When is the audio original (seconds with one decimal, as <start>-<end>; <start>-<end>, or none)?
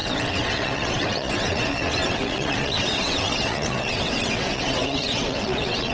none